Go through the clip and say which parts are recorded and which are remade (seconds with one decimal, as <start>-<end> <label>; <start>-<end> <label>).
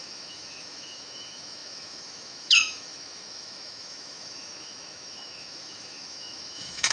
0.0-6.9 remade